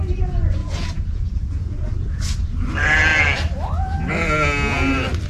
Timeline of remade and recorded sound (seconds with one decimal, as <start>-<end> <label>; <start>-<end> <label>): 0.0-0.6 recorded; 0.6-2.2 remade; 2.2-5.3 recorded